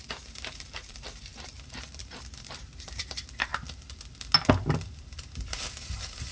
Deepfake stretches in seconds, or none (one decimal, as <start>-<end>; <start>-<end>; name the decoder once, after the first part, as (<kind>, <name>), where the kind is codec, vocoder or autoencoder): 0.0-3.5 (vocoder, BigVGAN v2); 4.5-6.3